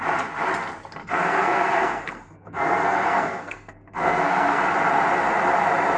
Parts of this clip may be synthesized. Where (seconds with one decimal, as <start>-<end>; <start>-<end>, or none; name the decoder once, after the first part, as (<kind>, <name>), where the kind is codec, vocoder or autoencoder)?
1.0-4.6 (codec, SNAC)